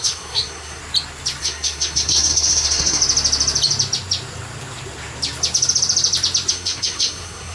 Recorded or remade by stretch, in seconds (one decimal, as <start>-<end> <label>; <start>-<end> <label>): 0.0-0.8 remade; 0.8-1.4 recorded; 1.4-3.0 remade; 3.0-6.5 recorded; 6.5-7.5 remade